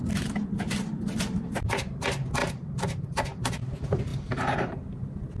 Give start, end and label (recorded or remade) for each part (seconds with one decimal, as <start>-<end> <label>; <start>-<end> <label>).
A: 0.0-2.4 recorded; 2.4-3.4 remade; 3.4-4.1 recorded; 4.1-4.8 remade; 4.8-5.4 recorded

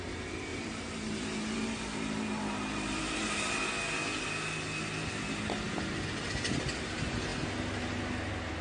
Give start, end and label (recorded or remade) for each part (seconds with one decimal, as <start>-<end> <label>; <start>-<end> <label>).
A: 0.0-0.5 recorded; 0.5-3.5 remade; 3.5-8.6 recorded

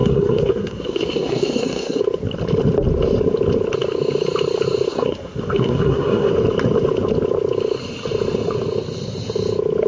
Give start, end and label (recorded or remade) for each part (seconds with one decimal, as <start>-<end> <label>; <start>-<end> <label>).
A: 0.0-2.0 remade; 2.0-4.9 recorded; 4.9-6.3 remade; 6.3-9.9 recorded